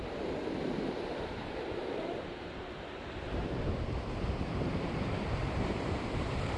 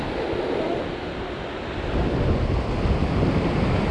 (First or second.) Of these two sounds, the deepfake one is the first